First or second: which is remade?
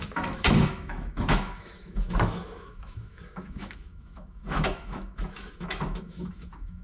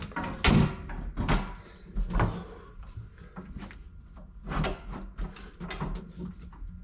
first